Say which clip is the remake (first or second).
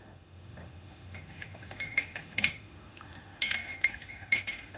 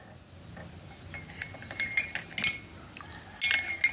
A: first